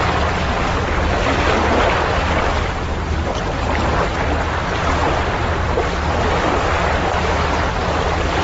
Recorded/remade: recorded